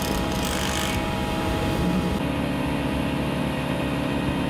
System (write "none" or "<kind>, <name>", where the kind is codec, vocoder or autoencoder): none